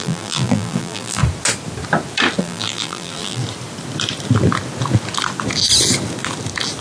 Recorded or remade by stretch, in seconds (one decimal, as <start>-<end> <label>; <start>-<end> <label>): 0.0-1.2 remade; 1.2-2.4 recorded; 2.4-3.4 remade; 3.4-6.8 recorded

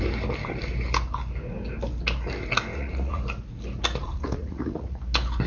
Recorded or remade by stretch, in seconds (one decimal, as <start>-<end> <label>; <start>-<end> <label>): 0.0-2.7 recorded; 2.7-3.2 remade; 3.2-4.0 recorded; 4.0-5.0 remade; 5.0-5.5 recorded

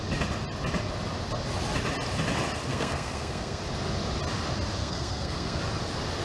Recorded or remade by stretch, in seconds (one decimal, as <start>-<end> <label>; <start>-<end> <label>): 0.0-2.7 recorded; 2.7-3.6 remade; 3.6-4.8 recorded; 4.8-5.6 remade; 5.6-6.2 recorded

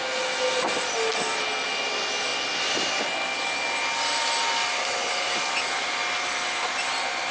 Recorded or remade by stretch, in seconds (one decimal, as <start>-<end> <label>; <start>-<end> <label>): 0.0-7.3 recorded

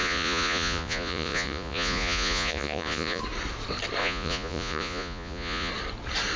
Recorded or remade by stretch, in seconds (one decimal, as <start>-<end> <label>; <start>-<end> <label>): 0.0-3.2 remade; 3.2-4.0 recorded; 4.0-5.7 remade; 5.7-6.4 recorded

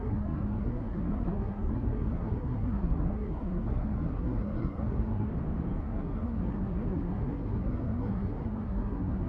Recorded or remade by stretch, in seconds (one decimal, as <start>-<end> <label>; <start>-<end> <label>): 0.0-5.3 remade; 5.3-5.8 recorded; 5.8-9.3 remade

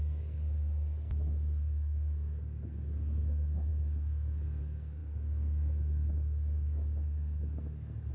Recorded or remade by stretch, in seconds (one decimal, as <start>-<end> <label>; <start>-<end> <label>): 0.0-8.1 remade